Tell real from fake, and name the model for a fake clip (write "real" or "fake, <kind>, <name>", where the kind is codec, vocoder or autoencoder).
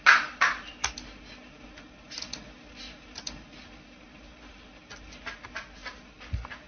real